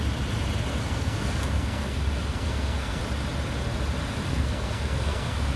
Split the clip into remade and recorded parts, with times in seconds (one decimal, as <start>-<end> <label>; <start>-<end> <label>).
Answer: 0.0-0.7 recorded; 0.7-3.0 remade; 3.0-4.3 recorded; 4.3-5.6 remade